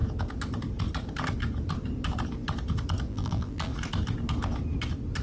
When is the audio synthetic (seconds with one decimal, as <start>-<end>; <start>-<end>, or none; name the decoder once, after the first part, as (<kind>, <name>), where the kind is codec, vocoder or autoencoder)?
3.1-3.7 (vocoder, BigVGAN v2)

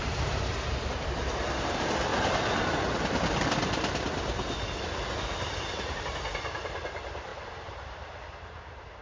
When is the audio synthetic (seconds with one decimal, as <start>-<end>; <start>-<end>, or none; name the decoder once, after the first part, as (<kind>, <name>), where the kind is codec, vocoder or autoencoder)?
0.0-2.1 (vocoder, BigVGAN v2); 5.1-9.0

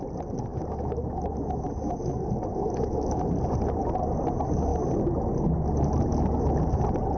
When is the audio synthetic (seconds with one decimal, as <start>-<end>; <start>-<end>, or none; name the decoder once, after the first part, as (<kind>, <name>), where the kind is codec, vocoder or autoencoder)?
0.5-1.7 (autoencoder, DAC-VAE); 2.5-3.2

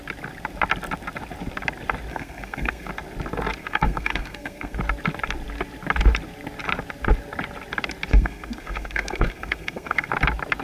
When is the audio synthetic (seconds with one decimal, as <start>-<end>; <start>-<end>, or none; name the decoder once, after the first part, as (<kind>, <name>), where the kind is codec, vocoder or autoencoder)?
2.1-2.9 (codec, SNAC); 3.6-4.8; 8.1-10.1

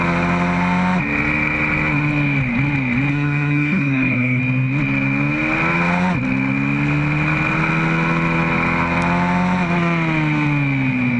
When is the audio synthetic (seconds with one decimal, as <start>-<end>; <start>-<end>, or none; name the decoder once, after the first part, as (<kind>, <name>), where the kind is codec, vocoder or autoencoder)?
3.1-4.4 (codec, SNAC)